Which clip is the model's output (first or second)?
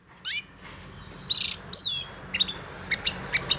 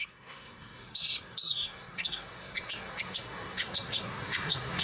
second